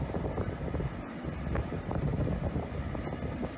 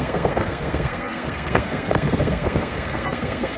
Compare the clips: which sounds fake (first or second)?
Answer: second